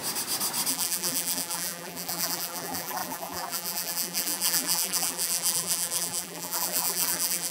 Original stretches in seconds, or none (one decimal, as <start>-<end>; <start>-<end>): 0.0-0.7

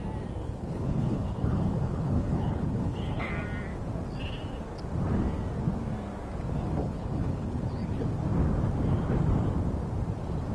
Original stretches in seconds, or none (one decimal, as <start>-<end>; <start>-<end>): 0.0-0.4; 3.3-6.8; 7.9-10.5

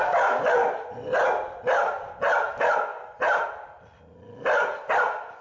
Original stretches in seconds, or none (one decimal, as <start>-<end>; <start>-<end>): 0.0-5.4

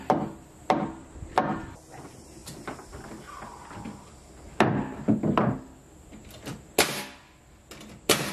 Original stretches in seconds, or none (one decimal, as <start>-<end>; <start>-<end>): 0.0-8.3

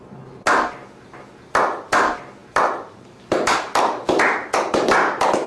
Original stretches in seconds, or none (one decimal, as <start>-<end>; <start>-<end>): 0.0-5.5

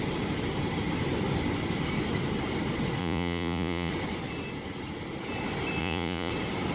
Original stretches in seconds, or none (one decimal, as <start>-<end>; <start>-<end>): 0.0-3.0; 3.9-5.8; 6.3-6.7

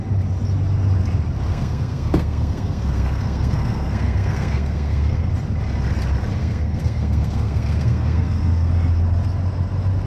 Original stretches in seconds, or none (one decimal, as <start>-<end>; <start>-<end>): 0.0-1.5; 5.3-6.4; 8.7-10.1

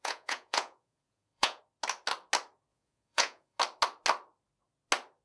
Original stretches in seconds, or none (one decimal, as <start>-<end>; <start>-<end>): 1.6-2.7; 3.6-5.2